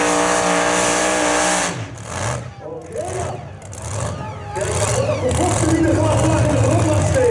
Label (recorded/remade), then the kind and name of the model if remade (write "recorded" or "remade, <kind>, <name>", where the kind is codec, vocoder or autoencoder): recorded